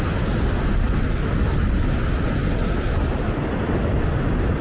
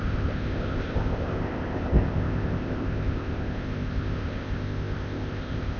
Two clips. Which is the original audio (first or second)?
first